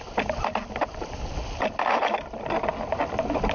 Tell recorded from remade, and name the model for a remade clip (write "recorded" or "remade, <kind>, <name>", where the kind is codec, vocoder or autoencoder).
recorded